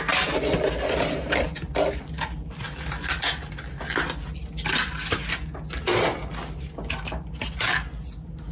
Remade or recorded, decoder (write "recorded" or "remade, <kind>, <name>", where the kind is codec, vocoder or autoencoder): recorded